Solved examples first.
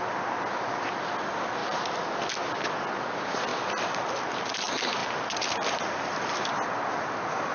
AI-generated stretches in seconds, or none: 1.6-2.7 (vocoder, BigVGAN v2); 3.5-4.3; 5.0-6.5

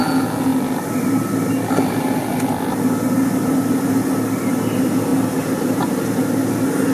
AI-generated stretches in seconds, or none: none

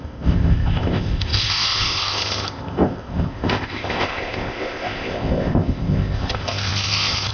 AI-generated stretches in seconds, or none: 0.0-7.3 (codec, ZipCodec)

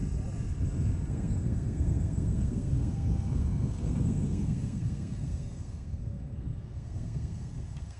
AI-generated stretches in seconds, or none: 1.1-8.0 (codec, SNAC)